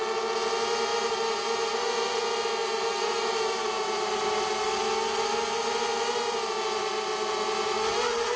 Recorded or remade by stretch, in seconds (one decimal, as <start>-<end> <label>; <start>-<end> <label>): 0.0-0.9 recorded; 0.9-2.2 remade; 2.2-2.6 recorded; 2.6-4.5 remade; 4.5-8.4 recorded